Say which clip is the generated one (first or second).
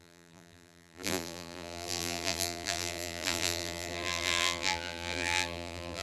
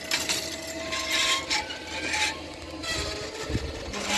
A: first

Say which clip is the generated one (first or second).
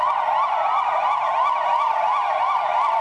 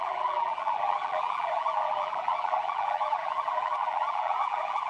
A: second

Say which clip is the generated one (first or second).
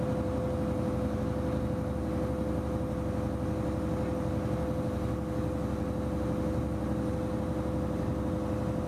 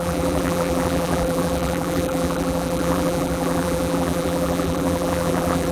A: second